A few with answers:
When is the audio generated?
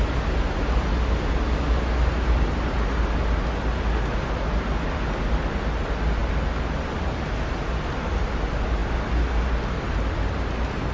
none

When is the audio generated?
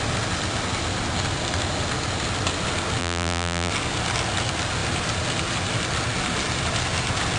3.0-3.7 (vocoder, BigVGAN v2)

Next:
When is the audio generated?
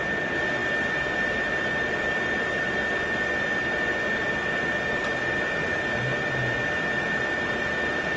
none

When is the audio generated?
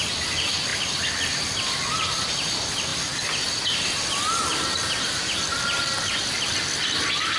none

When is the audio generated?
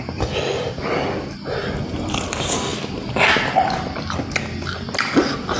2.7-3.4 (vocoder, BigVGAN v2)